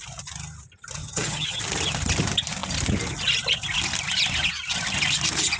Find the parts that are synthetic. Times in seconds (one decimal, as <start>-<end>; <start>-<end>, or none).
1.0-1.6